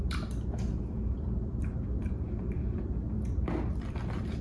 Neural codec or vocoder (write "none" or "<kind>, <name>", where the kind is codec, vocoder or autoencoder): vocoder, BigVGAN v2